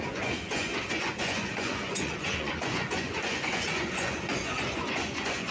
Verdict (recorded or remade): remade